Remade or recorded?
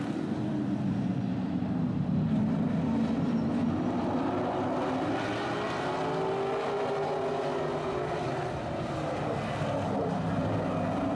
recorded